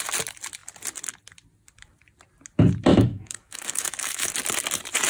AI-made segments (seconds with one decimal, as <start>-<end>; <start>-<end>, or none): 2.9-4.3